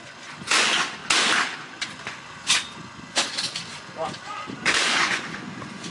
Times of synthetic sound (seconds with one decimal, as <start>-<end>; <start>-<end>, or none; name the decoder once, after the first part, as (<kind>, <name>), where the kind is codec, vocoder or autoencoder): 0.0-1.0 (vocoder, Vocos); 1.6-5.9